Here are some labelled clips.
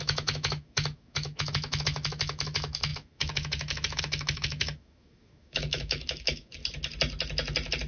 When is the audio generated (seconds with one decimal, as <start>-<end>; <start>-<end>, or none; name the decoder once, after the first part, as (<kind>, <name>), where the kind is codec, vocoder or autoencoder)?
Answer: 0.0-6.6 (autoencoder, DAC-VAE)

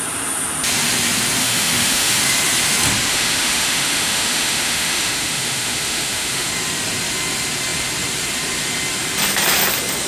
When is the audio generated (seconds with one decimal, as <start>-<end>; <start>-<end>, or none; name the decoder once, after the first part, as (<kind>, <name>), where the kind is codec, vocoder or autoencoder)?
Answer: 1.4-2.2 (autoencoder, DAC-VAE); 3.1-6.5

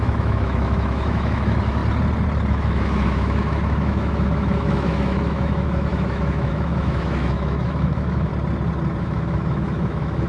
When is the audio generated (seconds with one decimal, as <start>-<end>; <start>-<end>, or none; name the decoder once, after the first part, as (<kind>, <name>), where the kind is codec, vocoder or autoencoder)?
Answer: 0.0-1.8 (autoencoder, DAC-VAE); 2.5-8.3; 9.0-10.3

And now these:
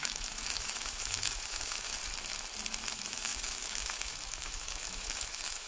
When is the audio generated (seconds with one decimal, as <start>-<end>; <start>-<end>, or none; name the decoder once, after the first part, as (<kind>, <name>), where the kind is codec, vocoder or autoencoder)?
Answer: 0.0-2.0 (autoencoder, DAC-VAE); 2.9-5.7

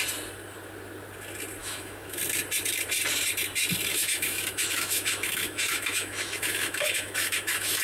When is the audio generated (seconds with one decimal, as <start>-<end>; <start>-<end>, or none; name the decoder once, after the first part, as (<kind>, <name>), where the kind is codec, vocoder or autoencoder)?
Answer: 1.6-2.2 (autoencoder, DAC-VAE); 3.9-7.8

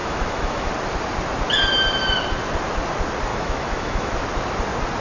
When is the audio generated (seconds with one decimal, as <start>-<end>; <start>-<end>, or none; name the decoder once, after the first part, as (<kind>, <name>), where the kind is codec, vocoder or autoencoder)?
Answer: 0.0-0.7 (autoencoder, DAC-VAE); 3.3-4.1

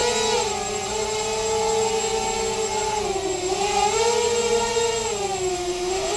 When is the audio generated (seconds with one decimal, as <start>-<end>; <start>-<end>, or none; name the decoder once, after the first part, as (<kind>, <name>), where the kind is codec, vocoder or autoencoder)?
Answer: 5.5-6.2 (autoencoder, DAC-VAE)

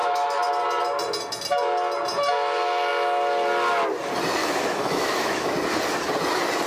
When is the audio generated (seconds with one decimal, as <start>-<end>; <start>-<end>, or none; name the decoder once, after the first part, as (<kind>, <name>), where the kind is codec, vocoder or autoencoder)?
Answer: 0.0-0.5 (autoencoder, DAC-VAE); 4.4-5.5